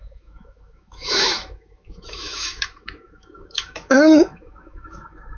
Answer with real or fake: fake